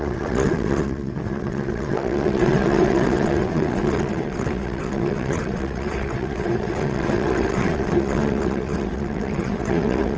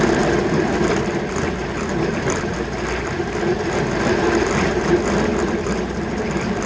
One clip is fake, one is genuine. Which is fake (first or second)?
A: first